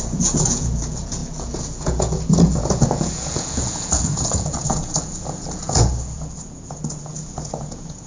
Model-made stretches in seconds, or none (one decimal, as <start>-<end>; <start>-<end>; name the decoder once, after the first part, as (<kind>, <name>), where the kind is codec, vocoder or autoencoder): 0.0-8.1 (vocoder, Vocos)